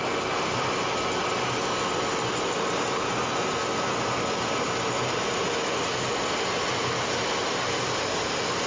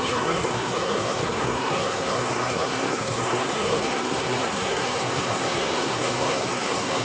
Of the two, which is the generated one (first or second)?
second